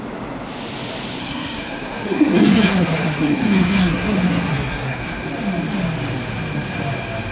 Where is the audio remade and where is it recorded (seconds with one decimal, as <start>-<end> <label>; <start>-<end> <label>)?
0.0-1.2 recorded; 1.2-5.0 remade; 5.0-7.3 recorded

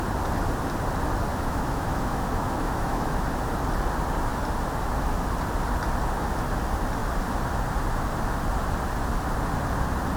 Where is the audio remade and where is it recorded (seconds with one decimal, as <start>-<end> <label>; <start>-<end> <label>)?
0.0-1.3 recorded; 1.3-3.3 remade; 3.3-10.2 recorded